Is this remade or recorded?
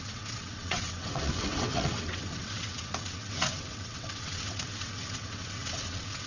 remade